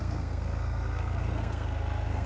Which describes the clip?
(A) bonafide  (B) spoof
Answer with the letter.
B